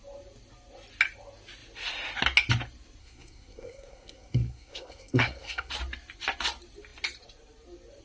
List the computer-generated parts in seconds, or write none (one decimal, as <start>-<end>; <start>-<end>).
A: 3.0-5.7